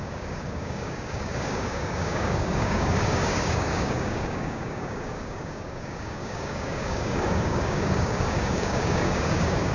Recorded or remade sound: remade